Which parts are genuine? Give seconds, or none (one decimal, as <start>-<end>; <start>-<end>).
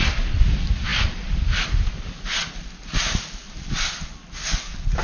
0.0-5.0